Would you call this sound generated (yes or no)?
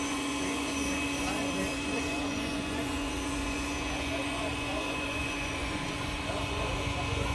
yes